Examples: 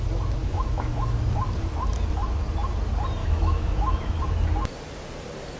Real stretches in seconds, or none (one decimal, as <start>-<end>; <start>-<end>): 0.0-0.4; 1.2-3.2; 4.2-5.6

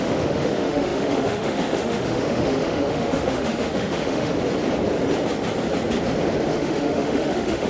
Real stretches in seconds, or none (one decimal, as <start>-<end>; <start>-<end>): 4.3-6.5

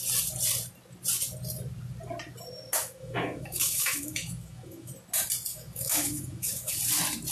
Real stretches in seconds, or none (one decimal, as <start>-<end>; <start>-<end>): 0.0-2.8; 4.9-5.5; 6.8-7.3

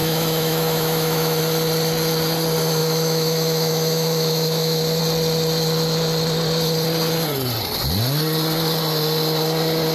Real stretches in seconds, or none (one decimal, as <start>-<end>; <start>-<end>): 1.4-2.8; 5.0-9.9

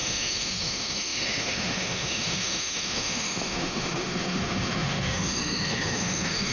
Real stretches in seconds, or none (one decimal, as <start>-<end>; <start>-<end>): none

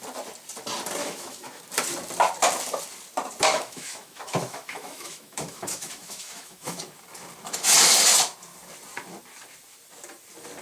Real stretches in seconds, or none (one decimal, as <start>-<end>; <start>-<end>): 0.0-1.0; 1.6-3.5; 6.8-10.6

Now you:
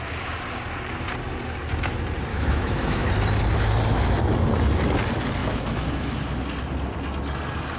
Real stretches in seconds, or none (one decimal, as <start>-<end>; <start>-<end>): 0.0-2.3; 3.1-5.4; 6.2-7.8